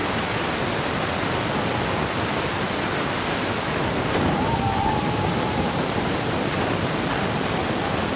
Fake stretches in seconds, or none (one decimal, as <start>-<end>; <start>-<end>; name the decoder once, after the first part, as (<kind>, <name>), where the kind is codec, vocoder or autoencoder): 3.8-6.3 (vocoder, BigVGAN v2)